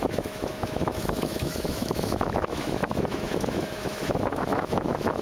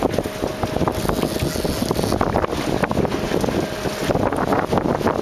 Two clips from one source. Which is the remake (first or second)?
first